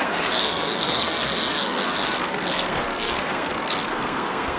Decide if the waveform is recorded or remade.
remade